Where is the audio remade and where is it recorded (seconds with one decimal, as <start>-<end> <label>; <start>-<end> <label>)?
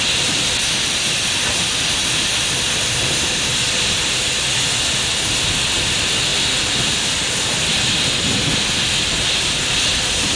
0.0-6.3 recorded; 6.3-7.5 remade; 7.5-10.4 recorded